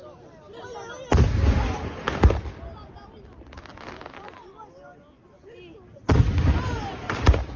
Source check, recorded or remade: recorded